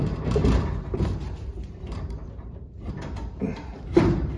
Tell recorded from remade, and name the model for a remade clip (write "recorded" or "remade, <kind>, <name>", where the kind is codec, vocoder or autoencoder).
remade, vocoder, BigVGAN v2